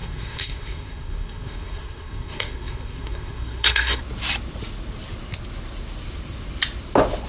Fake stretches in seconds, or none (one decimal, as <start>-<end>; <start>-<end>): 0.0-4.0